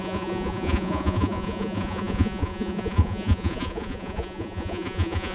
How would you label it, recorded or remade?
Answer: remade